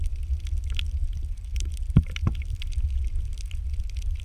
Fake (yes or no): no